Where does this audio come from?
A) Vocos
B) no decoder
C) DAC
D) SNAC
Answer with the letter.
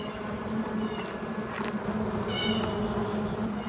B